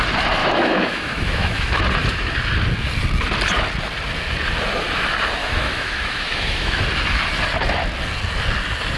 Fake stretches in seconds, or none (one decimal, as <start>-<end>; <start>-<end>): 0.4-1.8; 5.4-6.8